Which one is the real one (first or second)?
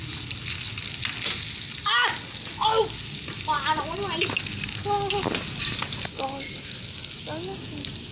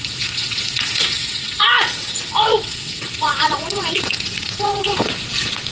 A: first